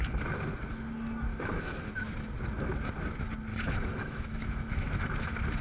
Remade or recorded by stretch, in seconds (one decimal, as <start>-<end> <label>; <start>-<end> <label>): 0.0-1.3 recorded; 1.3-1.9 remade; 1.9-3.5 recorded; 3.5-5.1 remade; 5.1-5.6 recorded